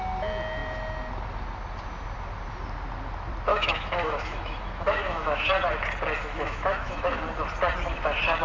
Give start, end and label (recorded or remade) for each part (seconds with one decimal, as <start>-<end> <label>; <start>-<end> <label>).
0.0-3.5 recorded; 3.5-5.5 remade; 5.5-6.2 recorded; 6.2-7.2 remade; 7.2-8.4 recorded